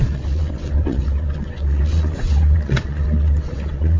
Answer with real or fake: fake